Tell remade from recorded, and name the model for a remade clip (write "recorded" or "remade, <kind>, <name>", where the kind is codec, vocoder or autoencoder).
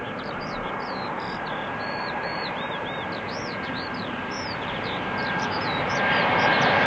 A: remade, vocoder, BigVGAN v2